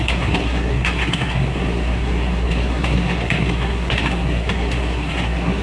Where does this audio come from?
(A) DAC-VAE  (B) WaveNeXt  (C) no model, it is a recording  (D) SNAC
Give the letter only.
D